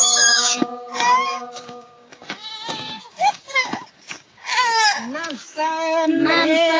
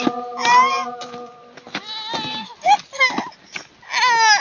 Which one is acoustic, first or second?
second